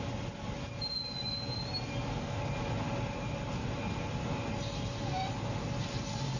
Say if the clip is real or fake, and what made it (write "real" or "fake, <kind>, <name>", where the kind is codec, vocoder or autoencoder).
real